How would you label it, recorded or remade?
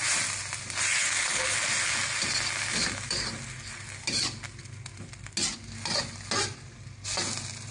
recorded